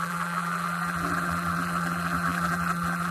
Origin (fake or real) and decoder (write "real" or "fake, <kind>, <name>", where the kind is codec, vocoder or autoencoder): fake, vocoder, BigVGAN v2